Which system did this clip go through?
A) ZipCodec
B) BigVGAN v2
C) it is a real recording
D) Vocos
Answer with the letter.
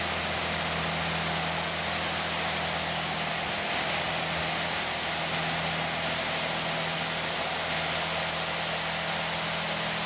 C